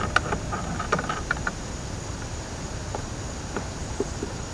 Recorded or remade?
recorded